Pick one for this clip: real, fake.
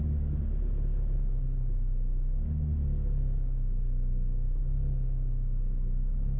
real